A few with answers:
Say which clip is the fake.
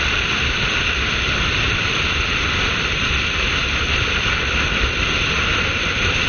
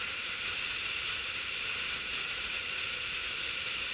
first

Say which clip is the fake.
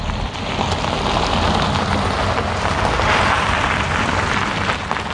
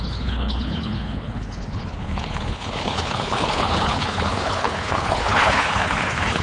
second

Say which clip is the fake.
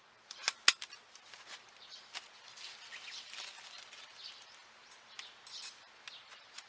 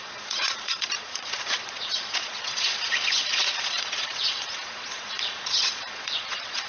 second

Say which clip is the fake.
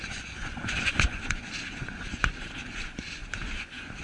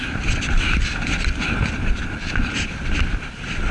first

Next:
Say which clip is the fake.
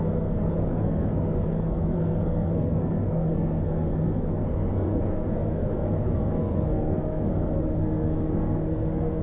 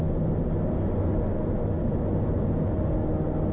first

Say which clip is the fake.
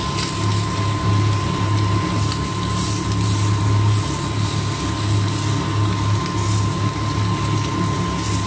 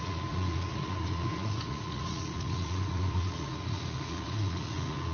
second